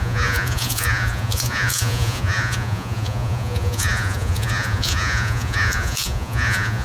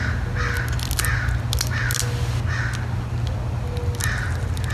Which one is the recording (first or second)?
second